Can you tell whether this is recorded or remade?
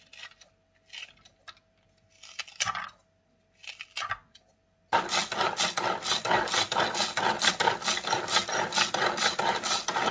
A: recorded